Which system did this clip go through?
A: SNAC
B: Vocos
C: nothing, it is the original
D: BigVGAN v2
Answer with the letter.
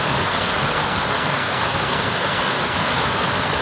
A